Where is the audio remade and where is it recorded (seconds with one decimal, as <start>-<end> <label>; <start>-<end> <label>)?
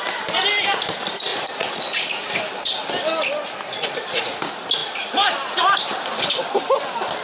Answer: 0.0-1.3 recorded; 1.3-1.8 remade; 1.8-7.2 recorded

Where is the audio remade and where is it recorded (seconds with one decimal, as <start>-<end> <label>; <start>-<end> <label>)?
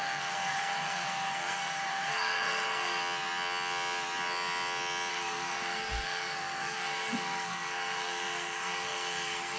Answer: 0.0-3.0 remade; 3.0-5.1 recorded; 5.1-9.6 remade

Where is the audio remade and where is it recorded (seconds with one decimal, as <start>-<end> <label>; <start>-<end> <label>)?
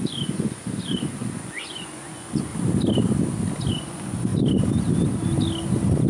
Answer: 0.0-2.5 remade; 2.5-3.7 recorded; 3.7-4.3 remade; 4.3-6.1 recorded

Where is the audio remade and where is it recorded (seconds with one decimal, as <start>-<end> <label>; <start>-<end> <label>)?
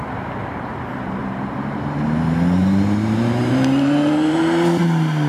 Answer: 0.0-1.2 recorded; 1.2-4.4 remade; 4.4-5.3 recorded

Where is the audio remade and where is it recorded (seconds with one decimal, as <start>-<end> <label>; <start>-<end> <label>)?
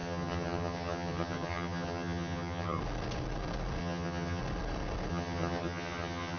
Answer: 0.0-2.8 remade; 2.8-3.8 recorded; 3.8-4.4 remade; 4.4-5.1 recorded; 5.1-6.4 remade